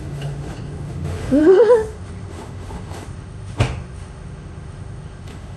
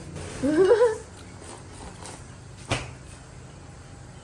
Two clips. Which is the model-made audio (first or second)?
first